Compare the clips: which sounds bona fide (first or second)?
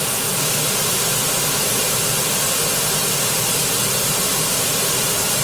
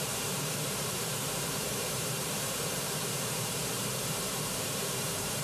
first